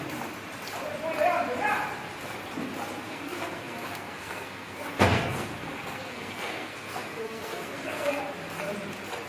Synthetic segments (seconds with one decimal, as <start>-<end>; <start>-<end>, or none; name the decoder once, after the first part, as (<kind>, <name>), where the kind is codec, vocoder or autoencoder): 3.1-8.2 (codec, SNAC)